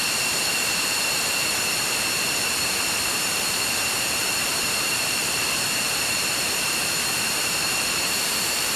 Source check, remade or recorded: remade